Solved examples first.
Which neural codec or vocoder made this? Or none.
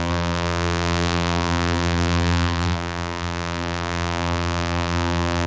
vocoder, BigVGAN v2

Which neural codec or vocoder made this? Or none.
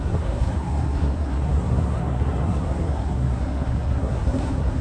codec, SNAC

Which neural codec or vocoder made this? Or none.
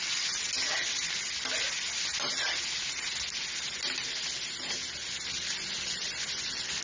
none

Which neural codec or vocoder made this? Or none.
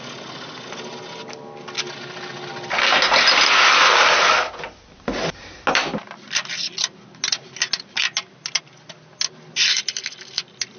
none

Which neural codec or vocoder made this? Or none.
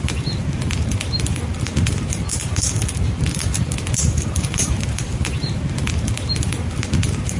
vocoder, BigVGAN v2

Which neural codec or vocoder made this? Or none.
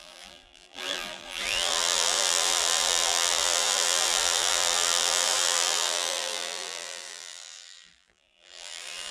vocoder, BigVGAN v2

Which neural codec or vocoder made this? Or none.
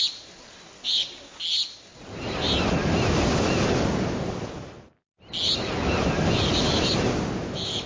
none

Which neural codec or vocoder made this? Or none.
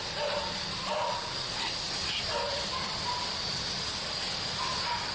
none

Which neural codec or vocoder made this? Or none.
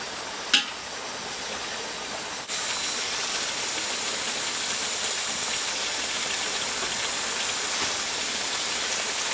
none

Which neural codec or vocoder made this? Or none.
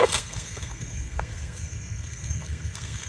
codec, SNAC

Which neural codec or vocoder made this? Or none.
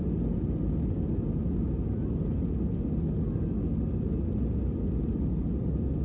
none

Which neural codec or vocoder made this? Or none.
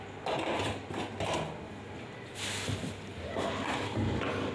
none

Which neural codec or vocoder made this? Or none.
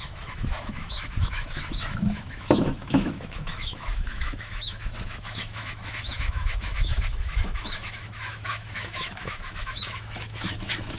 autoencoder, DAC-VAE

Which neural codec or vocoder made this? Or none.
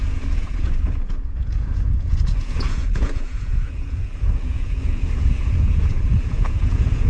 vocoder, Vocos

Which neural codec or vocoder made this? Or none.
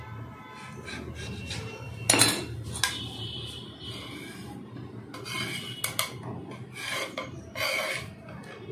none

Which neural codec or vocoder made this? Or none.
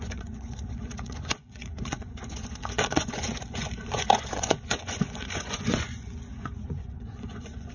vocoder, Vocos